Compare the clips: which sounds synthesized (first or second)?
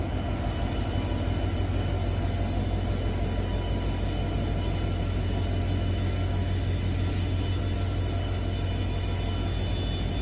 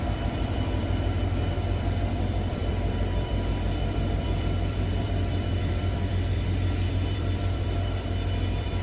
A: second